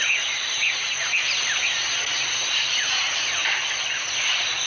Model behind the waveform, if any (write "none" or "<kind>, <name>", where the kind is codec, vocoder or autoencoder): none